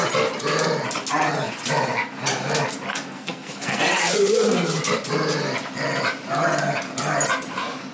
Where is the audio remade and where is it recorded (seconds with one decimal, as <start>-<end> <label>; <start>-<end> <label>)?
0.0-2.9 recorded; 2.9-3.8 remade; 3.8-7.9 recorded